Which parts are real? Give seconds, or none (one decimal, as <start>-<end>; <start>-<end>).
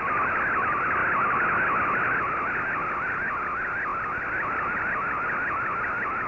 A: 0.0-6.3